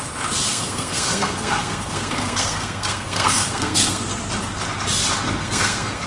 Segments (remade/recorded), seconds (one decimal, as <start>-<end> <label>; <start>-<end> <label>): 0.0-0.5 recorded; 0.5-4.2 remade; 4.2-5.4 recorded; 5.4-6.1 remade

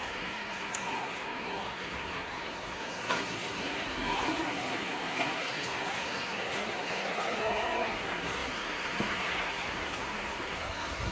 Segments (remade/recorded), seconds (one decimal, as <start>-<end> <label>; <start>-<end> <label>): 0.0-11.1 remade

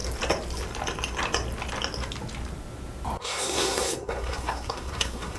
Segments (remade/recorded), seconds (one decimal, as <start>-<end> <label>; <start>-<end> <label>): 0.0-3.2 recorded; 3.2-5.4 remade

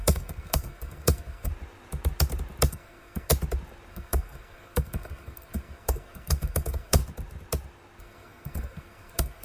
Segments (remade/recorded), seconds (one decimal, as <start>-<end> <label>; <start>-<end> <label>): 0.0-1.5 remade; 1.5-2.7 recorded; 2.7-3.3 remade; 3.3-3.9 recorded; 3.9-7.0 remade; 7.0-8.0 recorded; 8.0-9.4 remade

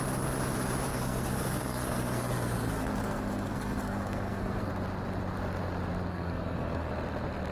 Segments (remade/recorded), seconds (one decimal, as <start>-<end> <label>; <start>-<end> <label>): 0.0-0.9 recorded; 0.9-4.7 remade; 4.7-6.1 recorded; 6.1-6.9 remade; 6.9-7.5 recorded

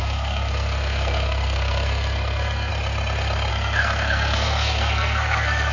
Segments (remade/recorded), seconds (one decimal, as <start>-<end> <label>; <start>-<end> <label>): 0.0-2.7 remade; 2.7-3.5 recorded; 3.5-5.7 remade

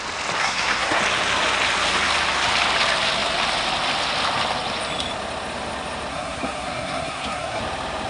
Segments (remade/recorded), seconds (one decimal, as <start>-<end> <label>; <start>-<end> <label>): 0.0-0.4 recorded; 0.4-1.0 remade; 1.0-6.1 recorded; 6.1-7.6 remade; 7.6-8.1 recorded

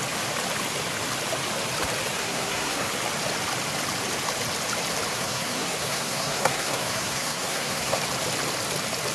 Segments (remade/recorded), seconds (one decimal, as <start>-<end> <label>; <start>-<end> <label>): 0.0-2.2 recorded; 2.2-2.9 remade; 2.9-5.1 recorded; 5.1-8.0 remade; 8.0-9.1 recorded